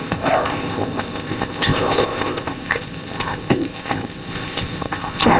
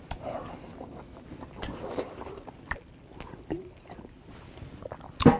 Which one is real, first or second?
second